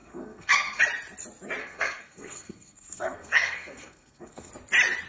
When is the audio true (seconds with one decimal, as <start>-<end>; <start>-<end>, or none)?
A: 0.8-1.6; 4.5-5.1